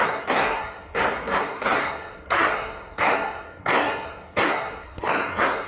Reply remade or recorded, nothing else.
remade